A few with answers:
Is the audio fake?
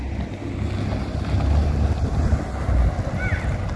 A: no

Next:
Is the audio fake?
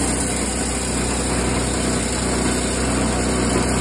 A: no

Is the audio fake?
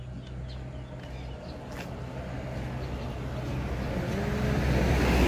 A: no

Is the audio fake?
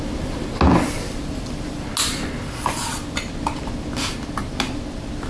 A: no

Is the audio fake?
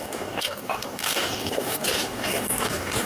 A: yes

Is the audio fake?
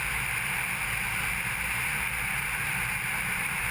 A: no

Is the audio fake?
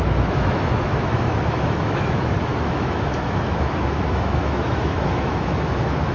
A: yes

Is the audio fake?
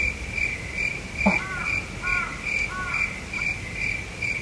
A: no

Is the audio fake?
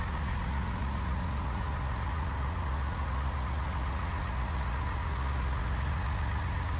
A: yes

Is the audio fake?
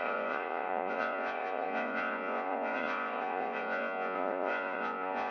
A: yes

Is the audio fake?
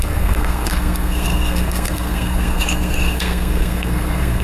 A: yes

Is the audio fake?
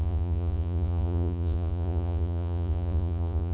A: yes